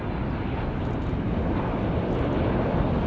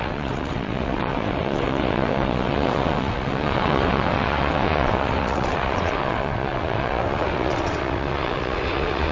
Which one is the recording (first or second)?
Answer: first